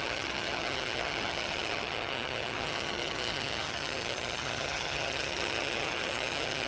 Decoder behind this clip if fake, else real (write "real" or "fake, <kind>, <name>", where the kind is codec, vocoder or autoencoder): fake, vocoder, HiFi-GAN